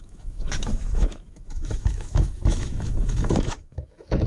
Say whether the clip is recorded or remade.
remade